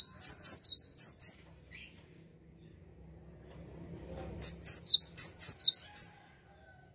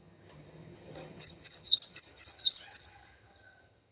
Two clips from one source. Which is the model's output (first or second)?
second